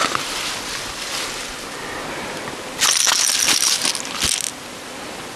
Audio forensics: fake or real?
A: real